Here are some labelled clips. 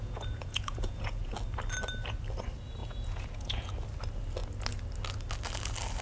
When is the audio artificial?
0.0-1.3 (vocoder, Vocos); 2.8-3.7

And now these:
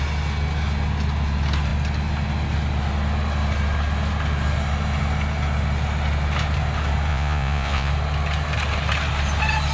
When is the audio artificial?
7.1-7.9 (vocoder, Vocos)

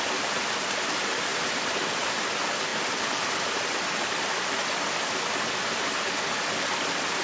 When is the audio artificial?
1.3-2.2 (vocoder, BigVGAN v2)